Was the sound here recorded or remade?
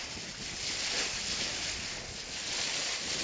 recorded